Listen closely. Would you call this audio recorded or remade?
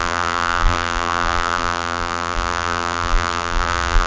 remade